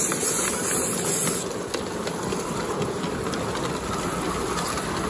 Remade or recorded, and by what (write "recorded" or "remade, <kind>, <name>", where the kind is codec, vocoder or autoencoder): recorded